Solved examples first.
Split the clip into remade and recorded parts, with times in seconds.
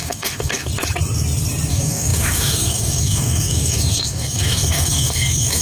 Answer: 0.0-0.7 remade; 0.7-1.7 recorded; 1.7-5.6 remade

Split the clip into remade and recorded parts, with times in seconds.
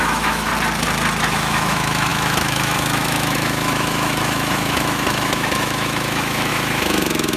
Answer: 0.0-0.5 remade; 0.5-1.3 recorded; 1.3-7.4 remade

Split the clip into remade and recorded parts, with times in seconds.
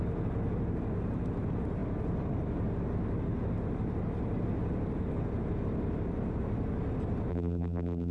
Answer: 0.0-7.3 recorded; 7.3-8.1 remade